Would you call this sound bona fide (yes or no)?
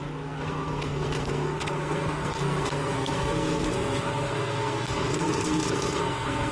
no